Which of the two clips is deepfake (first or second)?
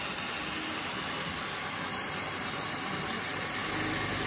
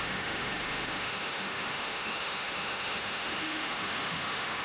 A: second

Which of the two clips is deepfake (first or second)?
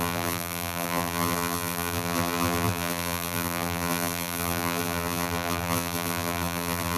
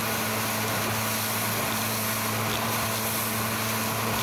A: first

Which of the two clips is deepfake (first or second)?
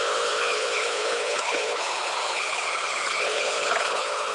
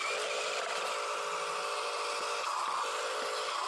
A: first